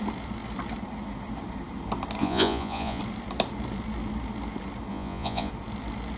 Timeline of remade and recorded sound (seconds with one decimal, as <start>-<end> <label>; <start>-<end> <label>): 0.0-2.2 recorded; 2.2-3.0 remade; 3.0-4.9 recorded; 4.9-5.5 remade; 5.5-6.2 recorded